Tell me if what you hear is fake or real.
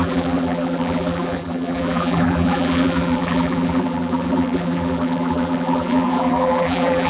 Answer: fake